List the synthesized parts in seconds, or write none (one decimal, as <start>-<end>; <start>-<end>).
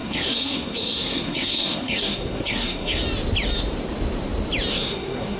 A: 0.0-3.0; 4.7-5.4